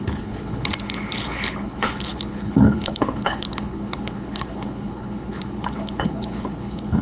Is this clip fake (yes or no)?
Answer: yes